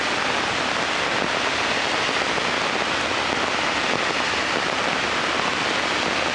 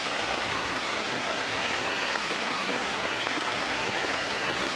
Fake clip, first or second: second